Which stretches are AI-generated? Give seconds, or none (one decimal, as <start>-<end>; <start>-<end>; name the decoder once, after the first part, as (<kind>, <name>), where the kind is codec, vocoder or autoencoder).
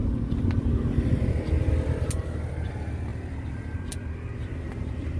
3.1-3.9 (vocoder, BigVGAN v2); 4.4-5.2